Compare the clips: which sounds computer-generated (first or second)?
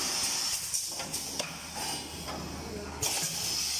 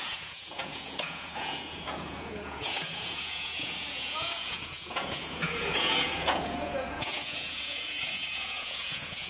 second